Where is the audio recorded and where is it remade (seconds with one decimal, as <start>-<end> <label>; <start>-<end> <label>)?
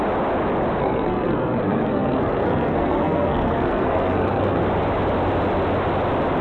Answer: 0.0-0.8 recorded; 0.8-4.6 remade; 4.6-6.4 recorded